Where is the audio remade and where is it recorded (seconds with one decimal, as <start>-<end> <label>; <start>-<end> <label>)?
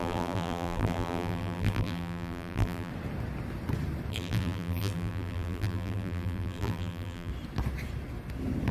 0.0-2.9 remade; 2.9-4.1 recorded; 4.1-7.3 remade; 7.3-8.7 recorded